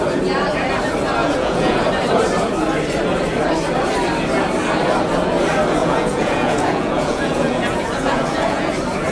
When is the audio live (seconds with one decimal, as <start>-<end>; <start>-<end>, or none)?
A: 0.0-1.2; 1.8-5.8; 8.7-9.1